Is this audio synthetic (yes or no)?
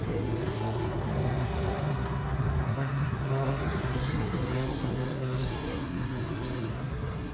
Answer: yes